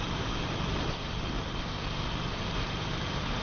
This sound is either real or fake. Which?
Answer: fake